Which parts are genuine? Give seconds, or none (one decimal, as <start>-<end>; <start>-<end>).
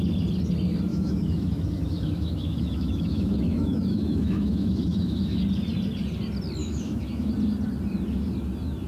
0.0-0.9; 5.4-6.6; 7.3-8.9